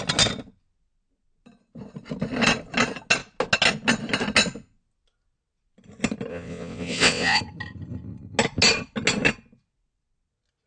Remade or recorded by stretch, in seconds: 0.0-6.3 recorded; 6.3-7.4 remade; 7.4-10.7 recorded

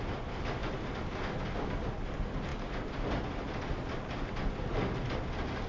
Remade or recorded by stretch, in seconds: 0.0-5.7 recorded

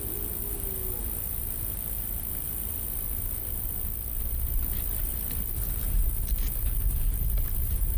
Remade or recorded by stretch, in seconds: 0.0-8.0 recorded

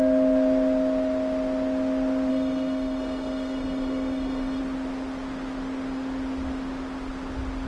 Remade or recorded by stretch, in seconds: 0.0-2.3 recorded; 2.3-4.6 remade; 4.6-7.7 recorded